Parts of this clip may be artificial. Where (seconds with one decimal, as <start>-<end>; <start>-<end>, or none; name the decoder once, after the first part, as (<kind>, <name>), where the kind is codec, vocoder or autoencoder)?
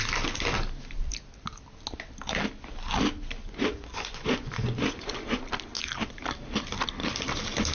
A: 3.4-5.4 (vocoder, Vocos)